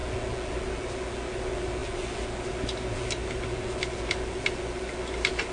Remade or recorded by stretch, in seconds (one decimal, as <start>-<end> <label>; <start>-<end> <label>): 0.0-5.5 recorded